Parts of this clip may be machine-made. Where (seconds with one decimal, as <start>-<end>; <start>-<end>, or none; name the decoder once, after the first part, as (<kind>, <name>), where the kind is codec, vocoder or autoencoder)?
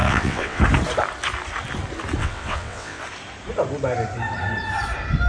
0.0-0.6 (vocoder, WaveNeXt); 2.2-3.0